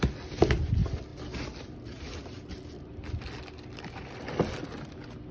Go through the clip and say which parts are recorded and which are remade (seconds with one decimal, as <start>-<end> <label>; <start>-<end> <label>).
0.0-5.3 recorded